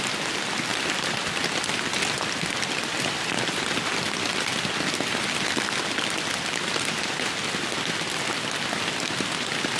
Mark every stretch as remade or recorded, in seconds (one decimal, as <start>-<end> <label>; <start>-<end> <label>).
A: 0.0-9.8 recorded